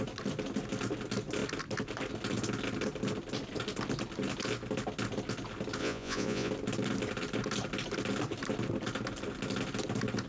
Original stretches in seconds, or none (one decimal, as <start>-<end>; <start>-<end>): 0.0-5.8; 6.5-10.3